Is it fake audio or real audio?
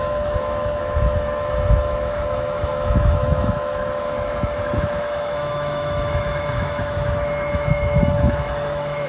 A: fake